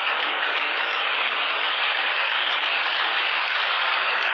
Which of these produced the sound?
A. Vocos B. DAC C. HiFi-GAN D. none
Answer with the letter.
B